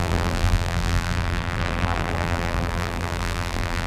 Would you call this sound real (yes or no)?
no